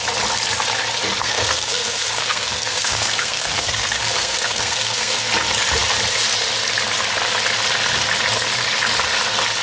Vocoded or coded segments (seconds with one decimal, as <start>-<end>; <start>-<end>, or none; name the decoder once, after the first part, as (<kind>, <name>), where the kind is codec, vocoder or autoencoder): 1.2-5.3 (codec, SNAC)